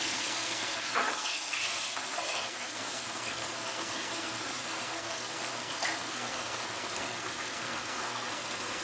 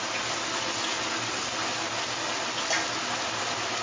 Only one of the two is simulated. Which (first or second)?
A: first